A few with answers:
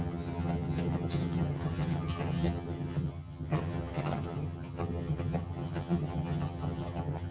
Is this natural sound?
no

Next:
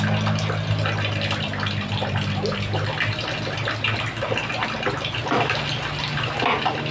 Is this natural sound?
yes